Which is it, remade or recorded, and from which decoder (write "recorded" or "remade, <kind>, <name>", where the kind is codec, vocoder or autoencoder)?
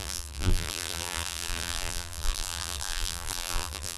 remade, vocoder, BigVGAN v2